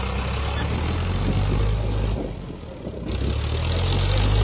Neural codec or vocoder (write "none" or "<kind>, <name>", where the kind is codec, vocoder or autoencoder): none